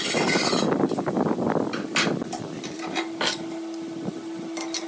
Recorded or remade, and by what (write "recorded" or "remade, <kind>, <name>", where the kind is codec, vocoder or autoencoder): recorded